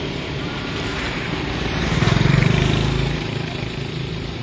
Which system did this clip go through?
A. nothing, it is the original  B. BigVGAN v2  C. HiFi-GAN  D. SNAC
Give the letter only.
B